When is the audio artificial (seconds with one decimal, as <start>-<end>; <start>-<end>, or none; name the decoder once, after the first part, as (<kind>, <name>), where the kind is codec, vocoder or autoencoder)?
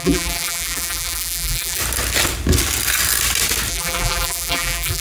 0.0-1.8 (vocoder, BigVGAN v2); 3.7-5.0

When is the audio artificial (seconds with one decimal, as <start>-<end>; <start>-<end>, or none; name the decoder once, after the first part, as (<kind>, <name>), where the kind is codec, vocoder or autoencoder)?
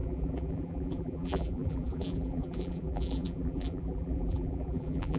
0.0-5.2 (vocoder, BigVGAN v2)